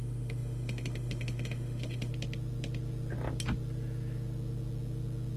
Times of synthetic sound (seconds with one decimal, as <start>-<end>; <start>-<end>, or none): 0.0-2.1